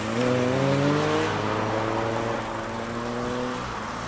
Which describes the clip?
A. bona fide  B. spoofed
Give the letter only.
A